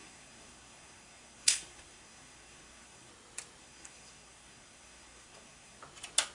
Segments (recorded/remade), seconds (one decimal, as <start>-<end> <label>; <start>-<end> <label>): 0.0-3.1 remade; 3.1-3.6 recorded; 3.6-5.8 remade; 5.8-6.3 recorded